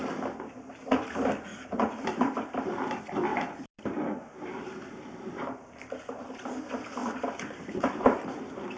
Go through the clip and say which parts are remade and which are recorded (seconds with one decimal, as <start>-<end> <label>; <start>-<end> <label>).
0.0-1.5 recorded; 1.5-2.5 remade; 2.5-3.3 recorded; 3.3-6.5 remade; 6.5-7.0 recorded; 7.0-8.2 remade; 8.2-8.8 recorded